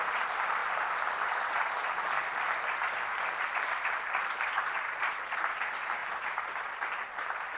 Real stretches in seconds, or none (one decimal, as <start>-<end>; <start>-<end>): 0.0-0.6; 5.2-7.6